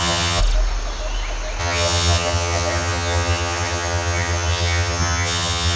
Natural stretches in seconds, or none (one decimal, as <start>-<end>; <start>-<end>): 0.4-1.6